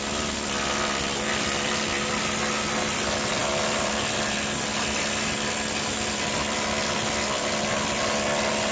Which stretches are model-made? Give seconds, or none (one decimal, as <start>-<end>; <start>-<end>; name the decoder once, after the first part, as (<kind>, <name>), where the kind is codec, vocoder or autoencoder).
none